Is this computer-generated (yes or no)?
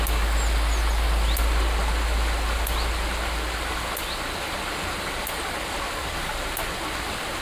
no